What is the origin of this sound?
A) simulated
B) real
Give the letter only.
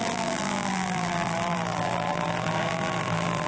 A